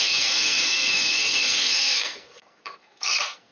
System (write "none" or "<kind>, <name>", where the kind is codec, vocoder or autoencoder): codec, SNAC